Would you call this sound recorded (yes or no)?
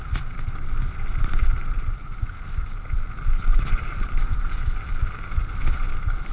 yes